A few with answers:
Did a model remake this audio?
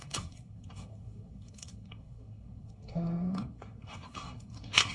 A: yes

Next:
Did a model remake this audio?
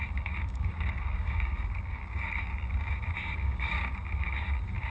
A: yes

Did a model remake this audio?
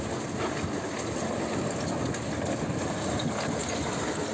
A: no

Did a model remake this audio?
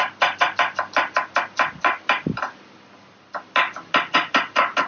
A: no